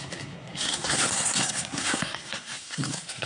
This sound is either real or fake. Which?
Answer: fake